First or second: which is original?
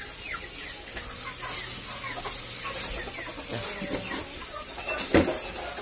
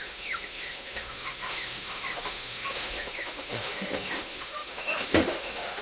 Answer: first